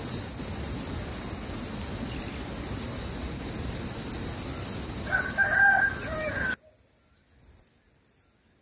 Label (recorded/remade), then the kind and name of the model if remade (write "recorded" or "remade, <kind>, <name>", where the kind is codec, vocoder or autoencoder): recorded